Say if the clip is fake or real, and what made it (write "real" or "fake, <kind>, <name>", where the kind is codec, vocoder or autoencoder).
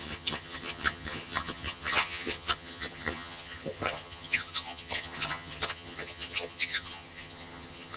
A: fake, vocoder, HiFi-GAN